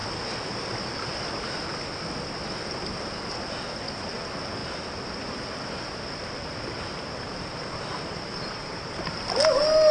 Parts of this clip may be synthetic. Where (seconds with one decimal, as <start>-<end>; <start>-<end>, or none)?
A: 7.5-9.2

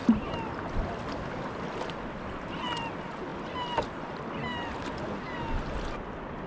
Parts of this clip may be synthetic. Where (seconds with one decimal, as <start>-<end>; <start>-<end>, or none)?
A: 0.0-0.6

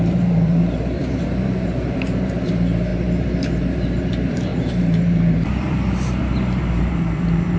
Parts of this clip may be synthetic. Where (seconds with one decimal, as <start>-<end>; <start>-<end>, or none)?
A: 0.0-7.6

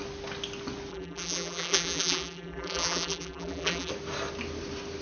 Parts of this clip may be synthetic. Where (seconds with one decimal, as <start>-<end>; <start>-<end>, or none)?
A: 0.9-3.9

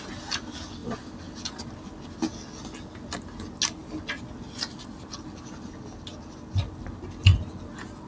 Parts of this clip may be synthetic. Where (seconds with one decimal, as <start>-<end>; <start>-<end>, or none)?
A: none

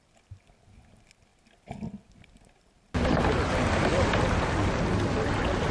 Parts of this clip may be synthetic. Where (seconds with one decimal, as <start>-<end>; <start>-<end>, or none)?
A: none

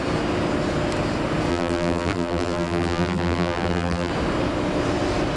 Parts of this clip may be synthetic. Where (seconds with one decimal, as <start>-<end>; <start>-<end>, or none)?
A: 1.5-4.1